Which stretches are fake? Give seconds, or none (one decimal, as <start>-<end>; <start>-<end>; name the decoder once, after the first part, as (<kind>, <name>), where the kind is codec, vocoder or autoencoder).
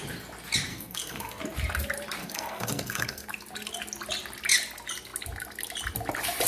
0.7-1.4 (codec, SNAC); 2.2-3.3